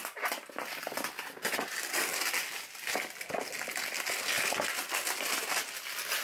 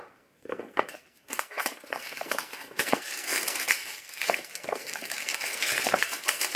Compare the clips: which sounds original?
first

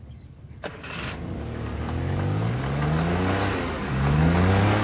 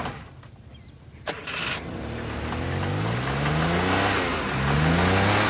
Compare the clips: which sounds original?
second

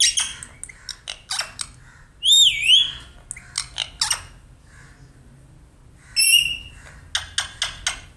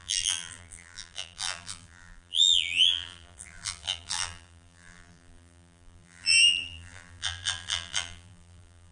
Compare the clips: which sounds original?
first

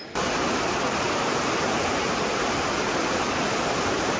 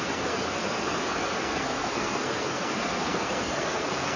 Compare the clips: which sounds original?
first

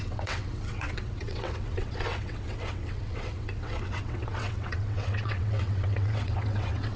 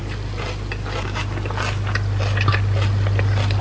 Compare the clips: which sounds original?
second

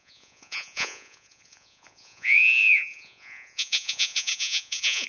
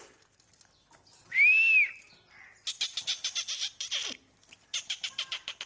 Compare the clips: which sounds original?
second